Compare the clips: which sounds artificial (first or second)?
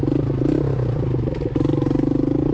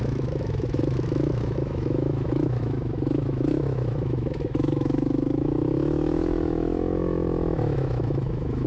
second